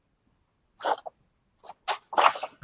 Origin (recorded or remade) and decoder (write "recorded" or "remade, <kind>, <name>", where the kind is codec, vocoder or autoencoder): recorded